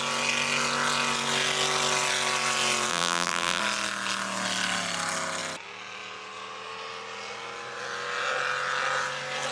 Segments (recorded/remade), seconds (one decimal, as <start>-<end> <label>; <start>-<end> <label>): 0.0-2.9 recorded; 2.9-3.6 remade; 3.6-9.5 recorded